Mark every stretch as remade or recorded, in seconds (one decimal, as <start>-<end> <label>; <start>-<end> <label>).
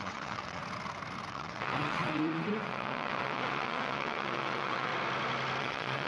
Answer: 0.0-0.6 remade; 0.6-1.3 recorded; 1.3-4.9 remade; 4.9-5.6 recorded; 5.6-6.1 remade